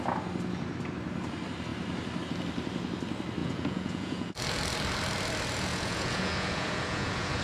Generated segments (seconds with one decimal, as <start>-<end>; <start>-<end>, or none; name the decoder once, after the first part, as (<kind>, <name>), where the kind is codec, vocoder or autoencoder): 3.4-4.3 (vocoder, Vocos); 5.7-7.4